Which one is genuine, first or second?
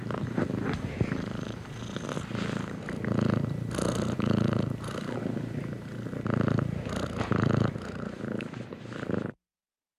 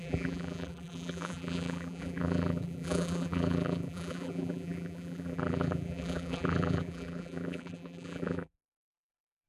first